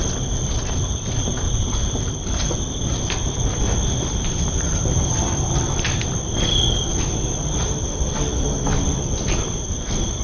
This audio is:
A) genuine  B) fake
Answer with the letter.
B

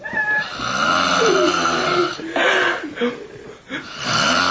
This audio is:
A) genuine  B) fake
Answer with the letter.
A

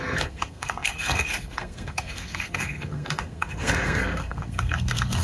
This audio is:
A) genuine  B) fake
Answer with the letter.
B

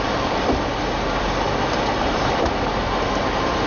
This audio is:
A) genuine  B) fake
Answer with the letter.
A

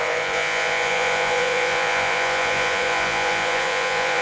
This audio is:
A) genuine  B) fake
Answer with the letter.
B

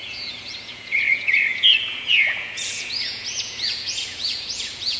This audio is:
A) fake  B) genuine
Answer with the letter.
A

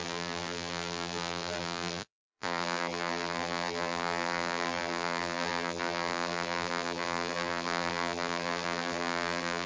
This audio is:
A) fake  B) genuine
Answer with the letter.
A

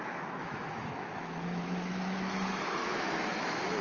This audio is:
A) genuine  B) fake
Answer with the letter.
B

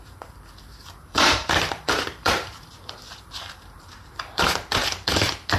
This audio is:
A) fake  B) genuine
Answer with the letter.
A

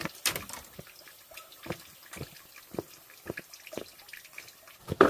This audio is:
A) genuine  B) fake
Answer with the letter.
A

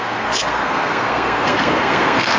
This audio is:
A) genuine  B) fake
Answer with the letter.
B